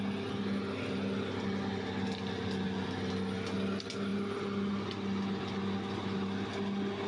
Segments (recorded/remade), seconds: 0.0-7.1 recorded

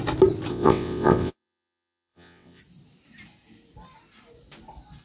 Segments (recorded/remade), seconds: 0.0-0.5 recorded; 0.5-2.6 remade; 2.6-5.0 recorded